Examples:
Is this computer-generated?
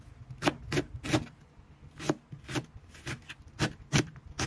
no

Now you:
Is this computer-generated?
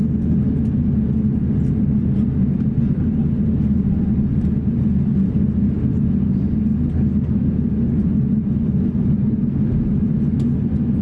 no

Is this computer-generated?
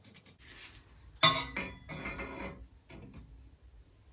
no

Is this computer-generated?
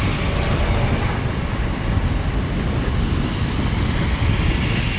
no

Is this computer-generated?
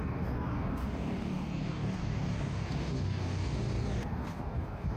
yes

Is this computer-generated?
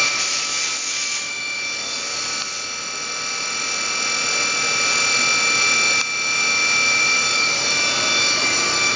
yes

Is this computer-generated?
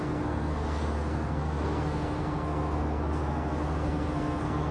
yes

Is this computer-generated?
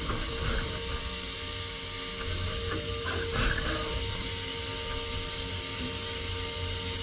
no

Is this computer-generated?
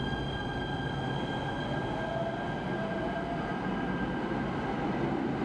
no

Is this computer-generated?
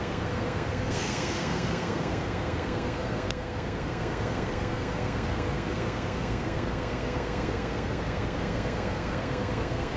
yes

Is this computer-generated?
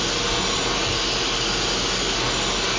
no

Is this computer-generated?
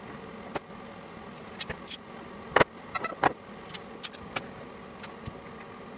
no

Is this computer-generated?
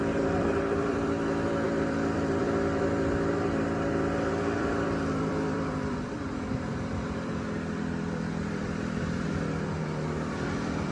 yes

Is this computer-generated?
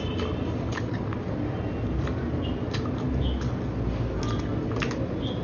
no